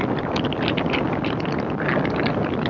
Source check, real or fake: real